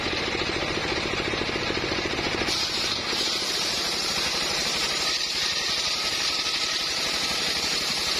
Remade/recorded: remade